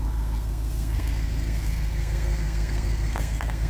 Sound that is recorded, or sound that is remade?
remade